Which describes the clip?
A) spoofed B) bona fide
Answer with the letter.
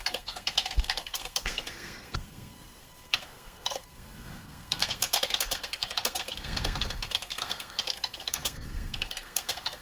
A